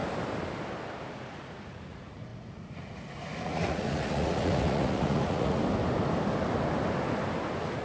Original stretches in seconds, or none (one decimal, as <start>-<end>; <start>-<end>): 0.0-1.1; 5.6-7.8